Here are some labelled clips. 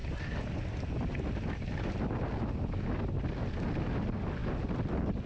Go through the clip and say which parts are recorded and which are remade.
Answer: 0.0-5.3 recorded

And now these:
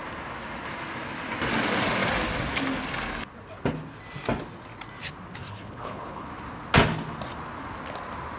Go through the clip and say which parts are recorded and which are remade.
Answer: 0.0-5.4 recorded; 5.4-6.3 remade; 6.3-8.4 recorded

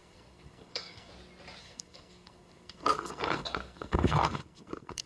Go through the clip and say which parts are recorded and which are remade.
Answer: 0.0-1.1 remade; 1.1-1.6 recorded; 1.6-5.1 remade

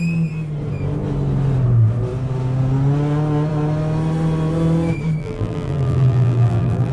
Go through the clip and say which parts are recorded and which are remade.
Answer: 0.0-5.2 recorded; 5.2-6.9 remade